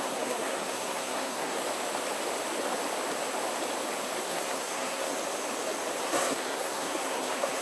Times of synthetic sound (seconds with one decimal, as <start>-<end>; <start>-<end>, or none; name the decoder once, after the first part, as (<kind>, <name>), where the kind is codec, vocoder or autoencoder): 0.0-1.6 (codec, SNAC); 4.2-5.1; 6.0-7.6